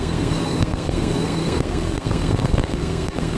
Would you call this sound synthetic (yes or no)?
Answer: yes